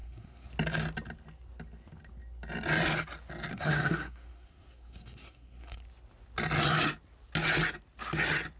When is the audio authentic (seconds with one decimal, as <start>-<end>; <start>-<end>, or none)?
0.5-3.5; 5.8-8.6